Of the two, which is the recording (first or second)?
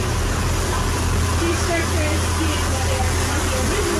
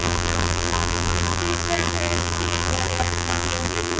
first